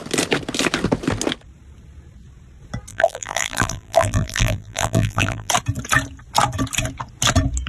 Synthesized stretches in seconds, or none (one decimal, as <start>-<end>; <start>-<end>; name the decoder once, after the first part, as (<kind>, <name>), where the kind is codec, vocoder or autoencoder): 2.9-5.5 (vocoder, BigVGAN v2)